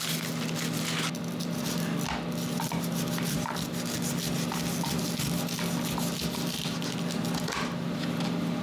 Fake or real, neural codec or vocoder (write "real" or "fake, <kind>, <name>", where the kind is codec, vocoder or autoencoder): real